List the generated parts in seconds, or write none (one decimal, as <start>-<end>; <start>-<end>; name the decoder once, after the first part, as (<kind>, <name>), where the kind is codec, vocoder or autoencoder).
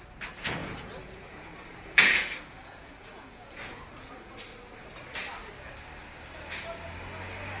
0.6-4.3 (vocoder, Vocos)